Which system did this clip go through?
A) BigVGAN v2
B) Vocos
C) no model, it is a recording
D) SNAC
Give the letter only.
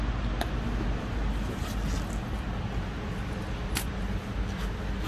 C